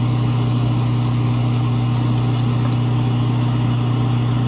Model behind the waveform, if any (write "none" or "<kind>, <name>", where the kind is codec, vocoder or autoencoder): none